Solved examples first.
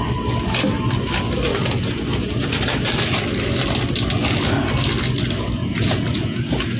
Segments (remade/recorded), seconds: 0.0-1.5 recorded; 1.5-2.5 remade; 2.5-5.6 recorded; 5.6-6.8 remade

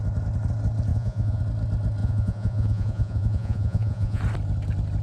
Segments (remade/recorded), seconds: 0.0-0.9 recorded; 0.9-1.4 remade; 1.4-2.0 recorded; 2.0-4.2 remade; 4.2-5.0 recorded

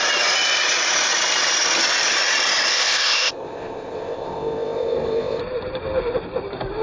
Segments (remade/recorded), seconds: 0.0-2.7 recorded; 2.7-5.4 remade; 5.4-6.8 recorded

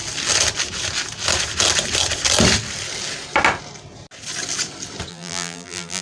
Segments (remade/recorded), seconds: 0.0-5.1 recorded; 5.1-6.0 remade

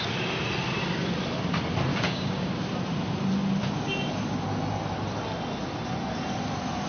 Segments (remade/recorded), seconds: 0.0-1.9 recorded; 1.9-2.5 remade; 2.5-6.9 recorded